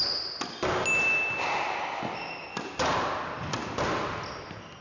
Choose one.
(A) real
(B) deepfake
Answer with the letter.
A